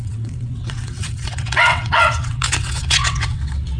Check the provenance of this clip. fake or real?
fake